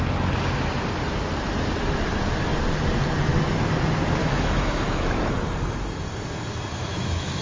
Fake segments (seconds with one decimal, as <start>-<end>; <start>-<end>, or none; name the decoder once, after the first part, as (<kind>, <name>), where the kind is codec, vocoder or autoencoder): 4.2-5.3 (autoencoder, DAC-VAE); 6.7-7.4